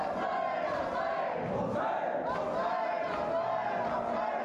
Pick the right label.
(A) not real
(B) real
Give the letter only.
B